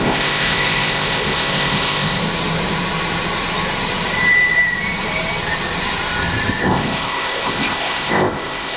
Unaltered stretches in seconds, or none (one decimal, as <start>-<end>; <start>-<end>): 2.2-6.6